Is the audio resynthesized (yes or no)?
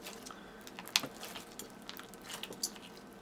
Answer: no